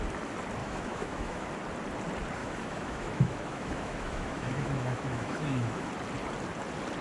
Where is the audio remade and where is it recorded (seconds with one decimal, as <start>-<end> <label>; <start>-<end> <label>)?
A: 0.0-0.6 recorded; 0.6-1.5 remade; 1.5-2.4 recorded; 2.4-5.9 remade; 5.9-7.0 recorded